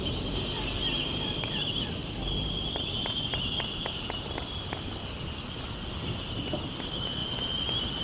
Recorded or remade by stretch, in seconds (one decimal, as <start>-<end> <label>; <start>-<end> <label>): 0.0-3.0 remade; 3.0-3.9 recorded; 3.9-5.0 remade; 5.0-6.7 recorded; 6.7-7.2 remade; 7.2-8.0 recorded